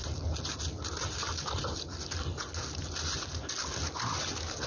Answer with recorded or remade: recorded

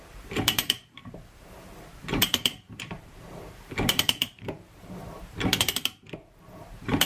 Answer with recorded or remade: remade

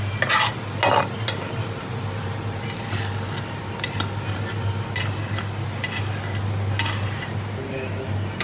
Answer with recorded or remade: recorded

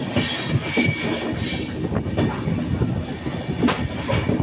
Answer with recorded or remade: recorded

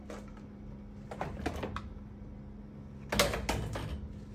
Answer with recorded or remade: recorded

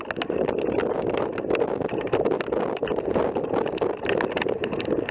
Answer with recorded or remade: recorded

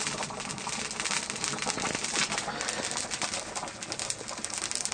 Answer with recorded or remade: recorded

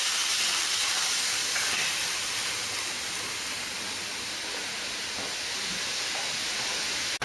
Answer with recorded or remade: recorded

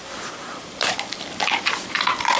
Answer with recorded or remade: remade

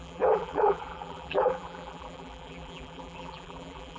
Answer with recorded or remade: remade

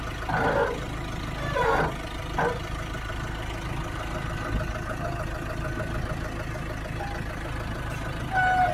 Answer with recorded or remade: recorded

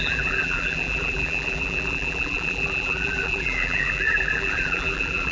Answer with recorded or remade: remade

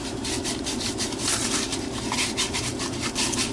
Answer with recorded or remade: remade